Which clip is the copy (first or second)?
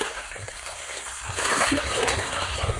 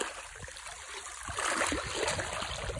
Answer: first